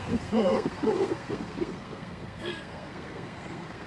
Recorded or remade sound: remade